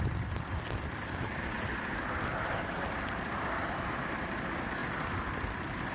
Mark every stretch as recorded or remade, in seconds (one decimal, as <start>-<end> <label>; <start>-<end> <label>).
0.0-5.9 recorded

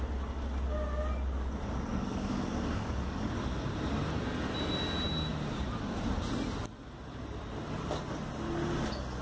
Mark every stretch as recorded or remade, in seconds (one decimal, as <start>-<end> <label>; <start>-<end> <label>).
0.0-2.0 recorded; 2.0-3.3 remade; 3.3-9.2 recorded

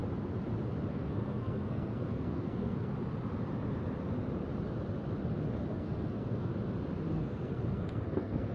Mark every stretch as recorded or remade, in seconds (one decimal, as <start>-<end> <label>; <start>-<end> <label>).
0.0-0.9 recorded; 0.9-2.9 remade; 2.9-5.7 recorded; 5.7-6.5 remade; 6.5-7.1 recorded; 7.1-8.5 remade